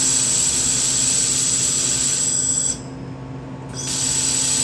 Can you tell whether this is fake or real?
real